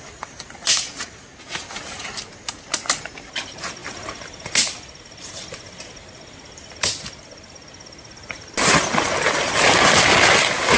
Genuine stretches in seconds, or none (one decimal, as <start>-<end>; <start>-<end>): 0.0-10.8